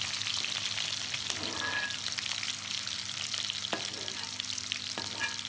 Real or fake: real